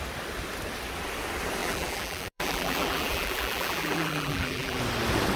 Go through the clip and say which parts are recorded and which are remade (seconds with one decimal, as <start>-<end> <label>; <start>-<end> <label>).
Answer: 0.0-1.6 recorded; 1.6-4.8 remade; 4.8-5.4 recorded